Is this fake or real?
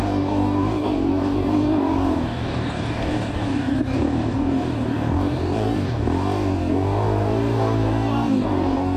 fake